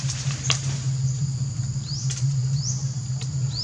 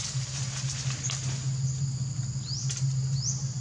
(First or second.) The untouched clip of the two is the second